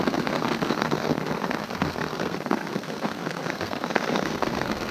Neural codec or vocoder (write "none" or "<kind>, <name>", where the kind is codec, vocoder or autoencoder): codec, SNAC